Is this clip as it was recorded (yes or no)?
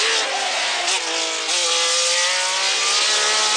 yes